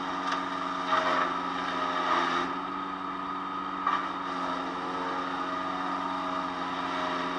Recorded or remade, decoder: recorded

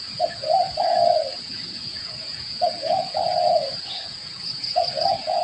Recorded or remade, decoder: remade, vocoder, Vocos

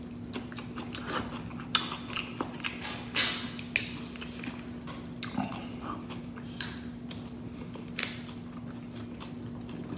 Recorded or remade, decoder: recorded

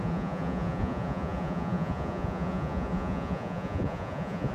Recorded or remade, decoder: remade, vocoder, Vocos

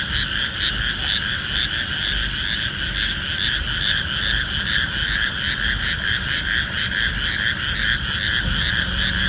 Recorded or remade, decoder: recorded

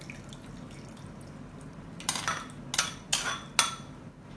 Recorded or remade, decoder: recorded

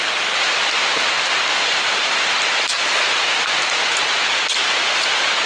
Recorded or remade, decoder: recorded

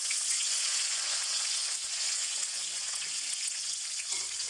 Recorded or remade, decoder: remade, vocoder, Vocos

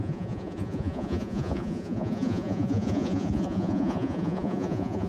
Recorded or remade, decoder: remade, vocoder, Vocos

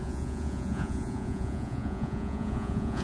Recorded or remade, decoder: remade, vocoder, Vocos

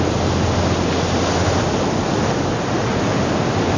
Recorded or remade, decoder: recorded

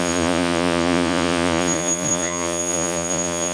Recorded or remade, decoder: remade, vocoder, Vocos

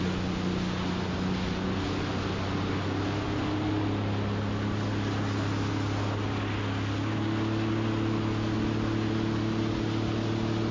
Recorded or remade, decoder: recorded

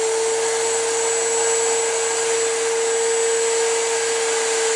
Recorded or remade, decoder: recorded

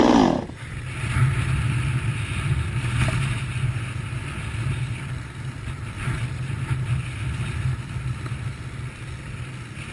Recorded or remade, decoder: recorded